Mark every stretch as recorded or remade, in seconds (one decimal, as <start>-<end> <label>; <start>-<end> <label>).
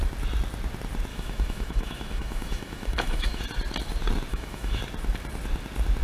0.0-1.1 recorded; 1.1-3.4 remade; 3.4-4.3 recorded; 4.3-4.8 remade; 4.8-6.0 recorded